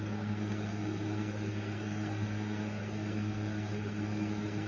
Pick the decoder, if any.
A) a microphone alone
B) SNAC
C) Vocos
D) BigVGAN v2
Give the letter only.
B